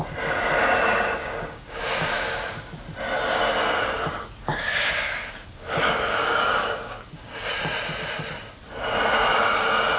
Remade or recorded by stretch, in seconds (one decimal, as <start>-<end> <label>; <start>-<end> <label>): 0.0-1.2 recorded; 1.2-2.7 remade; 2.7-4.5 recorded; 4.5-7.5 remade; 7.5-10.0 recorded